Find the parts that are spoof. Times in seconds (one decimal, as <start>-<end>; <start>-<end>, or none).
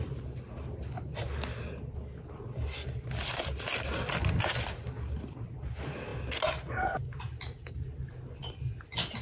none